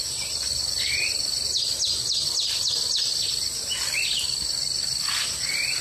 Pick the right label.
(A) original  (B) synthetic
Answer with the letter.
A